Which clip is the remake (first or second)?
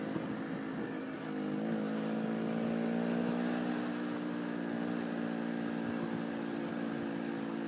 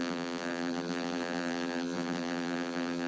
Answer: second